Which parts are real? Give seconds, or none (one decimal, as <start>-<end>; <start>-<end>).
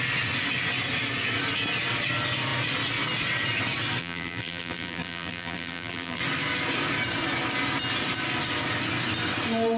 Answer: 0.0-4.0; 6.2-9.8